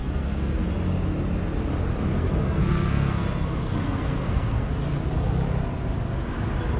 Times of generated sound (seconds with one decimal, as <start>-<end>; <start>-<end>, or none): 0.0-0.7; 2.1-4.7